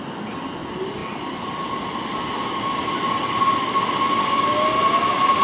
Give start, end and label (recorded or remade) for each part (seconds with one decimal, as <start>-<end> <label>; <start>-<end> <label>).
0.0-5.4 recorded